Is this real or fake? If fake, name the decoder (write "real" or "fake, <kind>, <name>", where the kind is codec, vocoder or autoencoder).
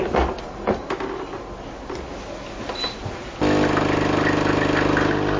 real